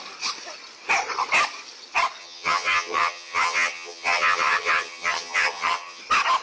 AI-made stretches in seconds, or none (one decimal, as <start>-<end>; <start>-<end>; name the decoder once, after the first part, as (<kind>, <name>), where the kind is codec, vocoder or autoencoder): 2.2-6.0 (vocoder, HiFi-GAN)